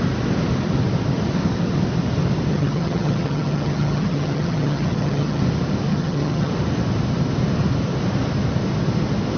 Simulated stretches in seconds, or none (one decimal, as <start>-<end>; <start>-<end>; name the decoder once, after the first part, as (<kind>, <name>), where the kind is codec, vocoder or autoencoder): 2.5-5.4 (vocoder, HiFi-GAN); 5.9-6.5

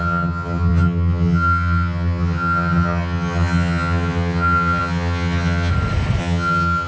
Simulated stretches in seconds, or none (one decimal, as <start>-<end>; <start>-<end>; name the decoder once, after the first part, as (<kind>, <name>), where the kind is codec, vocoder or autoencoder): 0.0-5.7 (vocoder, HiFi-GAN); 6.2-6.9

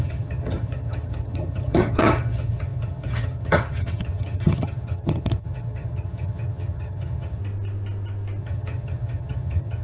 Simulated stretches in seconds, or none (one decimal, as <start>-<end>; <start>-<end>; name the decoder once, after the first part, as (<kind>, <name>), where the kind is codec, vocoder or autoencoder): 0.0-7.4 (vocoder, HiFi-GAN); 8.4-9.8

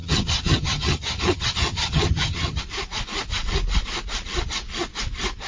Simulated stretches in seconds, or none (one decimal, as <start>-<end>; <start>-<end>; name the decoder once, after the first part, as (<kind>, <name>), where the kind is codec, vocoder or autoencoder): 0.0-2.6 (vocoder, HiFi-GAN)

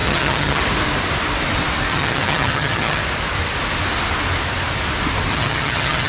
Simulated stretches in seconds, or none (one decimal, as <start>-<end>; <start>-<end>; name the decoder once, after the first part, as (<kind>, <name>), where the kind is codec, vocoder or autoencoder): 0.0-0.6 (vocoder, HiFi-GAN); 1.9-3.0; 5.3-6.1

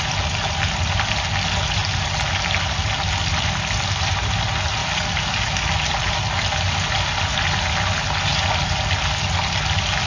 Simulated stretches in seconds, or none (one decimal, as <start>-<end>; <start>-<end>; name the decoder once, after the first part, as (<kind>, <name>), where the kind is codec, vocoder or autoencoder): none

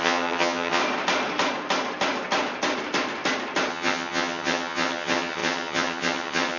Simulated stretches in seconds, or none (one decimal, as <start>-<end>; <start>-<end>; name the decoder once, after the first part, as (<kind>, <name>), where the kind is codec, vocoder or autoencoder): 0.0-0.8 (vocoder, HiFi-GAN); 3.7-6.6

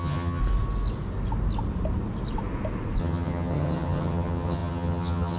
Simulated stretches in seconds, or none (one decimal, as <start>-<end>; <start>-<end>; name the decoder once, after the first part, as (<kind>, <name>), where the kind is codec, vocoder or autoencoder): 0.0-0.4 (vocoder, HiFi-GAN); 3.0-5.4